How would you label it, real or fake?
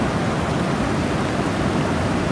real